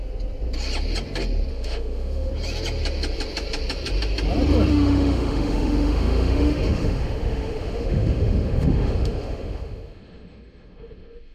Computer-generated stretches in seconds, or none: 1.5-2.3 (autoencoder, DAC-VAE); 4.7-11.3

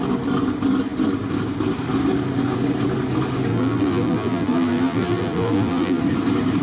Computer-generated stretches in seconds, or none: 3.5-6.0 (vocoder, BigVGAN v2)

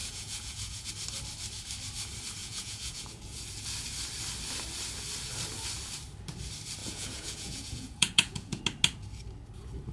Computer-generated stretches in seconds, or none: 0.0-0.9 (vocoder, Vocos); 2.4-3.4; 6.8-8.6